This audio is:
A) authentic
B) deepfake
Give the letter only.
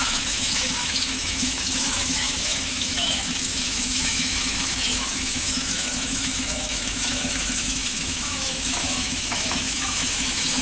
B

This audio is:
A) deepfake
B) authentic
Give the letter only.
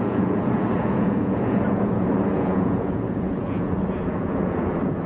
A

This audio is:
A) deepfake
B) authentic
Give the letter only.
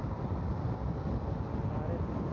B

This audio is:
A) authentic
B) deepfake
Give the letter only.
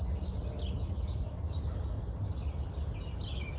A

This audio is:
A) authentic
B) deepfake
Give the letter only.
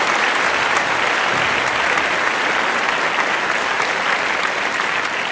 A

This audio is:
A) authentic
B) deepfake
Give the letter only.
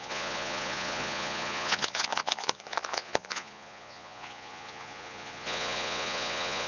B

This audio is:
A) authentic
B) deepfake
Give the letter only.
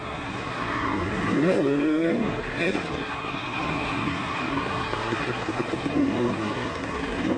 B